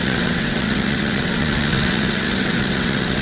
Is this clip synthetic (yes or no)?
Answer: yes